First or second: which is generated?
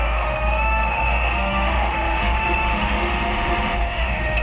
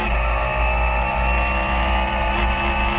first